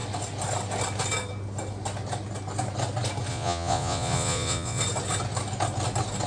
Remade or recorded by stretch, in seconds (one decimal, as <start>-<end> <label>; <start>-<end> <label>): 0.0-3.3 recorded; 3.3-4.8 remade; 4.8-6.3 recorded

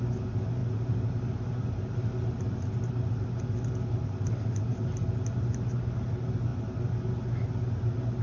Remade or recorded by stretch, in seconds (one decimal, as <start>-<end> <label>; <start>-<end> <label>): 0.0-6.5 remade; 6.5-8.2 recorded

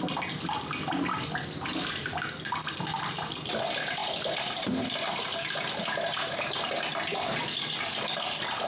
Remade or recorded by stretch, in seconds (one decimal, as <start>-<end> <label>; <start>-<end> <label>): 0.0-8.7 recorded

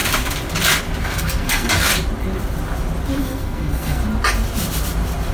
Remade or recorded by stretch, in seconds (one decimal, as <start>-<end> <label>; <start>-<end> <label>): 0.0-1.0 recorded; 1.0-1.9 remade; 1.9-3.2 recorded; 3.2-4.0 remade; 4.0-5.3 recorded

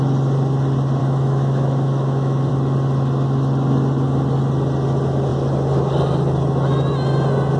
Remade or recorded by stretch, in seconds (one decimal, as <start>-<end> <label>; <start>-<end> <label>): 0.0-1.0 recorded; 1.0-2.5 remade; 2.5-7.6 recorded

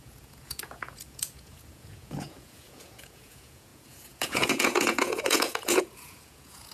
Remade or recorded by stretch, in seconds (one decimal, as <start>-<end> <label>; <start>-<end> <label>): 0.0-6.7 remade